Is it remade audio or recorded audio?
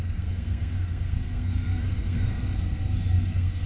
remade